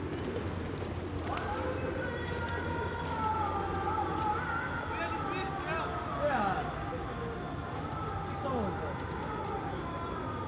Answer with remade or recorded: recorded